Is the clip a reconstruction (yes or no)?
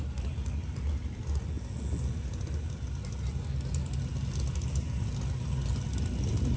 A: no